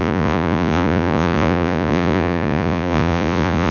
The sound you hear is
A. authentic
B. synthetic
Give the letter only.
B